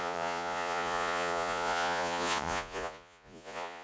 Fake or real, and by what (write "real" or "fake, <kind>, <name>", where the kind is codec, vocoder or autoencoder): fake, vocoder, Vocos